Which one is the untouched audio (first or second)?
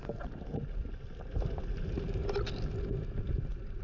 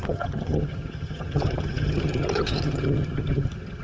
first